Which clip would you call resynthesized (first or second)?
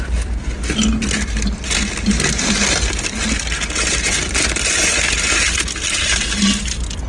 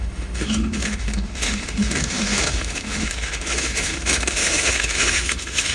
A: second